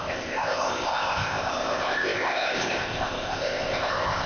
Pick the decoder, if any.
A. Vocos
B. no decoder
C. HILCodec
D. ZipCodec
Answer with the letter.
D